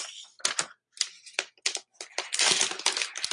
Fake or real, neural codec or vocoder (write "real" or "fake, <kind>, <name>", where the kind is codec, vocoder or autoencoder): real